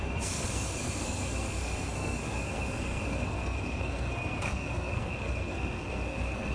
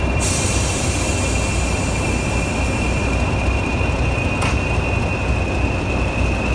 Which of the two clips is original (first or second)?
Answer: second